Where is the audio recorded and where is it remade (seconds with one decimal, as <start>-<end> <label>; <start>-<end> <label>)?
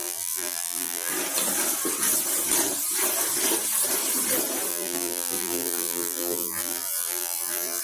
0.0-1.1 remade; 1.1-4.7 recorded; 4.7-7.8 remade